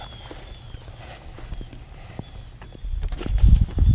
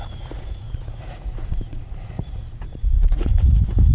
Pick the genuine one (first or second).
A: first